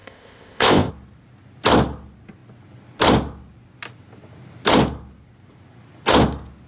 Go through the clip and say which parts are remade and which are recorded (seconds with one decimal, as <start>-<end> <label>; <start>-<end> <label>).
0.0-0.9 remade; 0.9-6.7 recorded